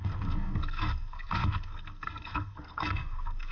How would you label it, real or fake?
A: fake